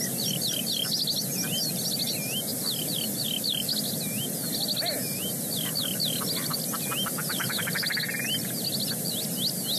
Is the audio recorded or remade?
recorded